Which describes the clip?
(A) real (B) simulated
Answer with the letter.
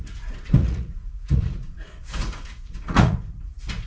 B